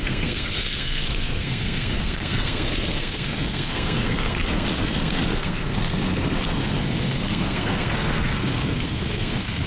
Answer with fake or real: fake